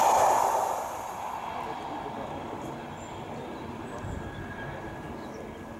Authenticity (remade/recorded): recorded